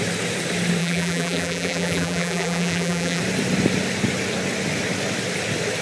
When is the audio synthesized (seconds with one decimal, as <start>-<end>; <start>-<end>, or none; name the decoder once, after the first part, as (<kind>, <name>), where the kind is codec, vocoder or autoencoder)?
0.8-3.2 (vocoder, BigVGAN v2)